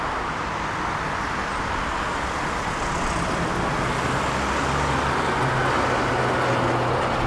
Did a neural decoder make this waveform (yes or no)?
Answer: no